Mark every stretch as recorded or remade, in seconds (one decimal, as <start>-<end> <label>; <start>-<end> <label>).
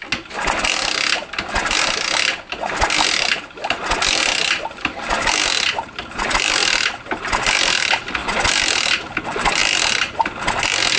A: 0.0-11.0 recorded